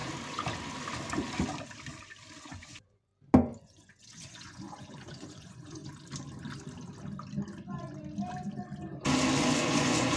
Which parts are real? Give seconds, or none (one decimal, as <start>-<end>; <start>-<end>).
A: 0.0-2.4; 3.1-3.6; 5.8-9.4